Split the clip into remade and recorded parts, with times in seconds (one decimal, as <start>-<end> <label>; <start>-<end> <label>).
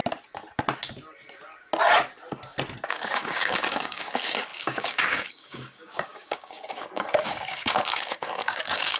0.0-2.9 recorded; 2.9-9.0 remade